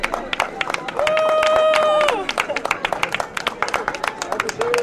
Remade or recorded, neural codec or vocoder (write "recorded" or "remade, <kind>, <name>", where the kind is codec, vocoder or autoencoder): recorded